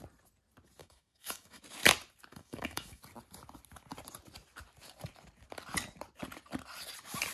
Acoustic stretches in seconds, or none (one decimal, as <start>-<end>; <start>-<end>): 0.0-0.8; 1.6-2.3; 3.0-7.3